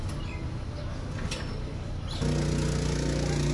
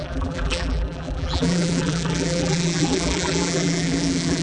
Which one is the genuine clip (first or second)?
first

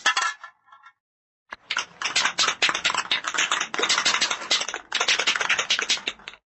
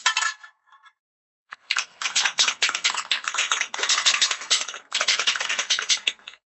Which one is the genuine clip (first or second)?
first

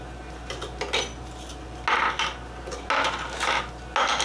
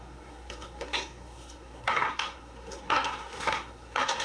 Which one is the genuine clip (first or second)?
first